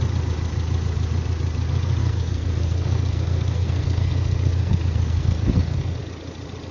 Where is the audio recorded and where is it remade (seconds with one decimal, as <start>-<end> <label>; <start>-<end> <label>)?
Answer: 0.0-2.0 recorded; 2.0-6.0 remade; 6.0-6.7 recorded